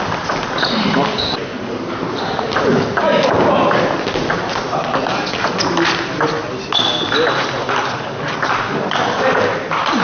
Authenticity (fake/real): real